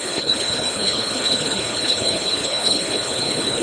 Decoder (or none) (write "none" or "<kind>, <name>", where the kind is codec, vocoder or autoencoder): codec, HILCodec